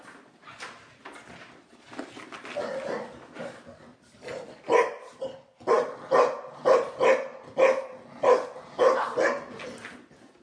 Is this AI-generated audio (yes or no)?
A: no